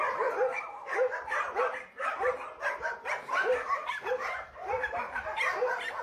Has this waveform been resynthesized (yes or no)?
no